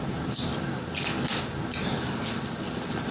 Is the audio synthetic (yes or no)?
no